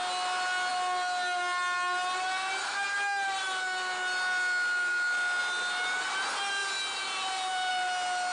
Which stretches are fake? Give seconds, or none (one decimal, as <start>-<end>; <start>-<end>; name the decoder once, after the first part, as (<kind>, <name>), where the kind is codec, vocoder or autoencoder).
6.6-7.7 (vocoder, BigVGAN v2)